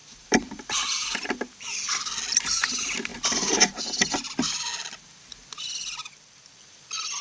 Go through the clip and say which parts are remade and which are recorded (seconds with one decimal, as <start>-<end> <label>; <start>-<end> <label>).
0.0-1.6 remade; 1.6-3.1 recorded; 3.1-3.8 remade; 3.8-7.2 recorded